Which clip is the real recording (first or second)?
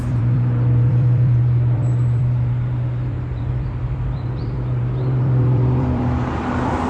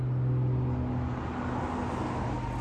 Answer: second